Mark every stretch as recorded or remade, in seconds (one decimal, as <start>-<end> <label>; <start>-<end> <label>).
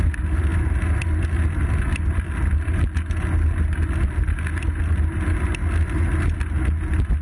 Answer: 0.0-7.2 recorded